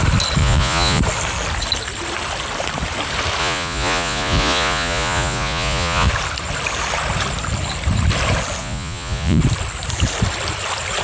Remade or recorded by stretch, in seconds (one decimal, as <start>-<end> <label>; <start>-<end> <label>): 0.0-0.4 recorded; 0.4-1.0 remade; 1.0-3.4 recorded; 3.4-6.1 remade; 6.1-8.6 recorded; 8.6-9.4 remade; 9.4-11.0 recorded